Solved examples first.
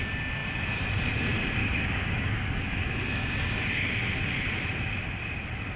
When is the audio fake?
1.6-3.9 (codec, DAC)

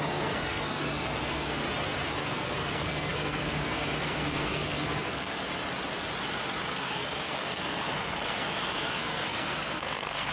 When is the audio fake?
0.0-1.6 (codec, SNAC); 2.2-5.4; 6.7-10.3

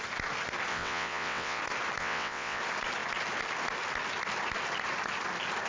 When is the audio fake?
0.7-1.6 (vocoder, WaveNeXt); 2.0-2.6

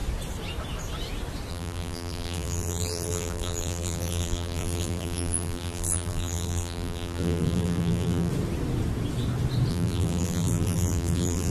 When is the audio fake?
1.5-8.3 (vocoder, BigVGAN v2); 9.7-11.5